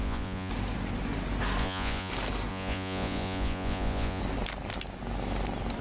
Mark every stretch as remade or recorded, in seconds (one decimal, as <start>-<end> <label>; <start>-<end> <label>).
0.0-0.5 remade; 0.5-1.6 recorded; 1.6-2.1 remade; 2.1-2.5 recorded; 2.5-4.2 remade; 4.2-5.8 recorded